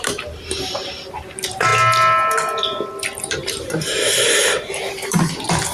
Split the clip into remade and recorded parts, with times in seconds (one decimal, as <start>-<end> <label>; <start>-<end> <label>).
0.0-1.7 remade; 1.7-3.2 recorded; 3.2-5.7 remade